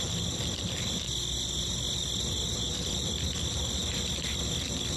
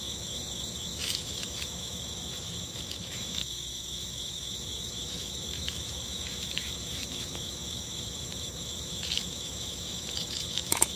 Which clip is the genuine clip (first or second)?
first